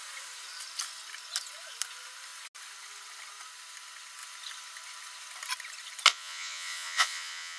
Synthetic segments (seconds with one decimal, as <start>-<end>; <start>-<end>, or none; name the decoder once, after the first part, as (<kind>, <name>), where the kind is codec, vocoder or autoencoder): 6.1-7.6 (vocoder, Vocos)